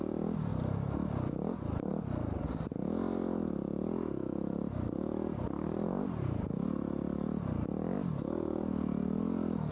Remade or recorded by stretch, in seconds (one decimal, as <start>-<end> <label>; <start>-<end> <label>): 0.0-9.7 recorded